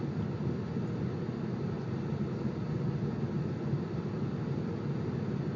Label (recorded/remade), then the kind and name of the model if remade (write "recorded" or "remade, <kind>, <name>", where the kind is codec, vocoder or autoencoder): recorded